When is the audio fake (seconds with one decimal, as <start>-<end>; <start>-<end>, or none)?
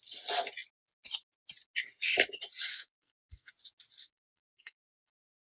2.7-3.5; 4.0-5.1